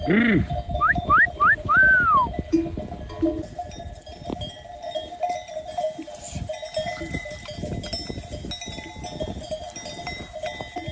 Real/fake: real